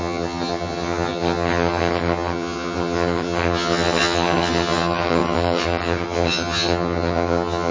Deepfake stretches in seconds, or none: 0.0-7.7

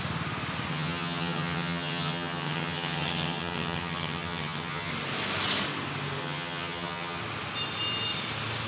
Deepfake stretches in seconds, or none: 0.7-4.9; 6.2-7.2